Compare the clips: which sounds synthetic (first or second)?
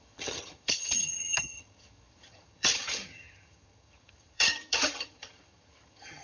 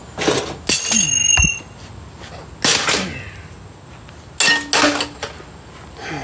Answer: first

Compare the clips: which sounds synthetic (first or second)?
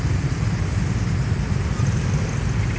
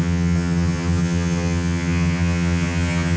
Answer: second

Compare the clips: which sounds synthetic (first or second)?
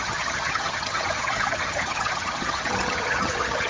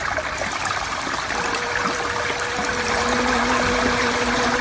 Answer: first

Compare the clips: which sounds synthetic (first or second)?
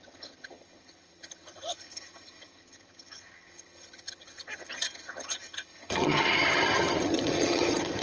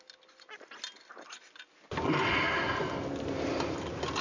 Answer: first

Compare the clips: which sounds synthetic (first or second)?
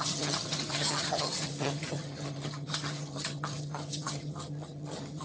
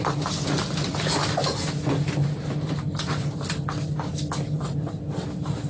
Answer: first